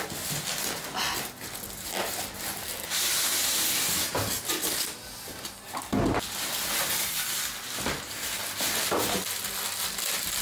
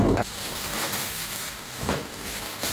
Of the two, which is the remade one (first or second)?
second